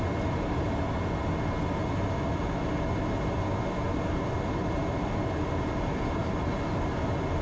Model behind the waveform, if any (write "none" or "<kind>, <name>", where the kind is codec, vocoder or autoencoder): none